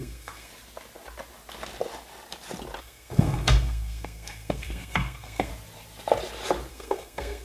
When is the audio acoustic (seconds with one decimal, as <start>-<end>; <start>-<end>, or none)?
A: 0.5-2.8; 5.5-6.7